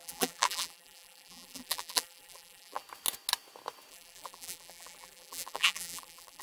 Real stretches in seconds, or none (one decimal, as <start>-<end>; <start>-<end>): 2.8-3.9